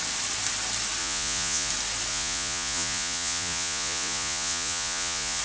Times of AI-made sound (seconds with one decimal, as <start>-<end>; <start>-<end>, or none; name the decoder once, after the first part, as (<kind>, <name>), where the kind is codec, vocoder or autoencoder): 1.0-1.7 (vocoder, Vocos); 2.1-5.4